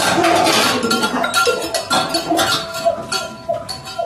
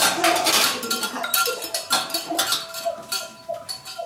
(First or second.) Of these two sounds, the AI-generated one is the second